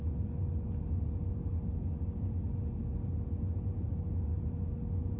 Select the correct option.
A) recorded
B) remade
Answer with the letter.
A